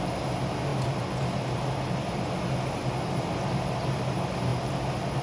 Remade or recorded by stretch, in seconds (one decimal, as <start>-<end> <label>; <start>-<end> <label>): 0.0-5.2 recorded